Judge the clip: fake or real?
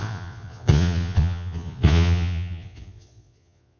fake